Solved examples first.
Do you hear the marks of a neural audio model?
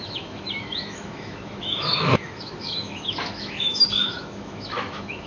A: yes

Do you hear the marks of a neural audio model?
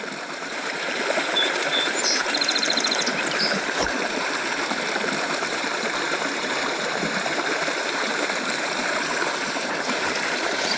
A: yes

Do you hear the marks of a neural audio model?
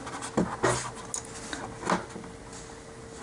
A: no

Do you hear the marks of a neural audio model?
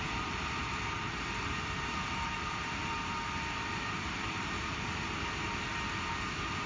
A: yes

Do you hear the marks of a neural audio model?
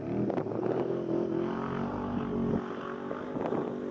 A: no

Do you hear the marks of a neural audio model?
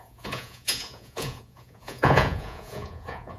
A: yes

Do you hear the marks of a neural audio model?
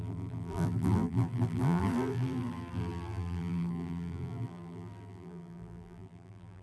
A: yes